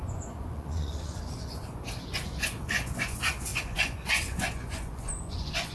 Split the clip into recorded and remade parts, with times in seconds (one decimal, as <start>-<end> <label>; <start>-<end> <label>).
0.0-5.7 remade